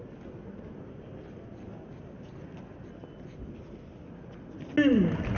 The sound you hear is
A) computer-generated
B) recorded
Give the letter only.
B